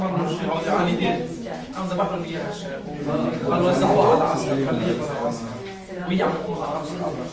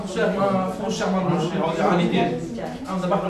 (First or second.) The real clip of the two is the second